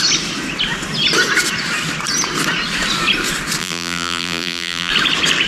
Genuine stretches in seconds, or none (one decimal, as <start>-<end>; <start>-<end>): 0.0-3.6; 4.9-5.5